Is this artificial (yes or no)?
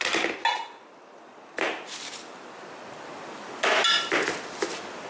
no